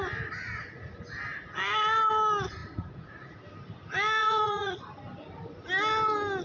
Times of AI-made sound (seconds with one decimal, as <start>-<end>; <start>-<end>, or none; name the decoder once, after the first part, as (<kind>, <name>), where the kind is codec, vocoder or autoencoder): 0.5-1.0 (vocoder, Vocos); 2.6-3.4; 4.2-4.8